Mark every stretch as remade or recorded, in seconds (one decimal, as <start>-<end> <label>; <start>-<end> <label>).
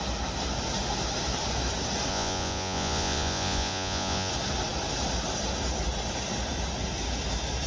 0.0-2.1 recorded; 2.1-4.3 remade; 4.3-7.7 recorded